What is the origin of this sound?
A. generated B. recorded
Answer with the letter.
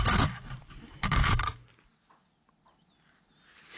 B